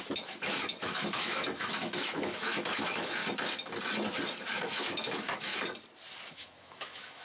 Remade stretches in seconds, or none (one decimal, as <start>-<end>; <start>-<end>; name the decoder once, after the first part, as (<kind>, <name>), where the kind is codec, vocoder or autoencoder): 0.0-3.2 (autoencoder, DAC-VAE); 4.3-5.5; 6.3-7.2